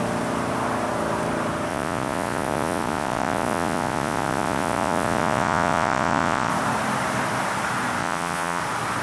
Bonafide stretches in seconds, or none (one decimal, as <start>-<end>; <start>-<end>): 0.0-1.7; 6.5-8.0; 8.6-9.0